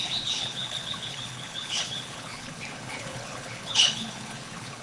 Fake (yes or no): yes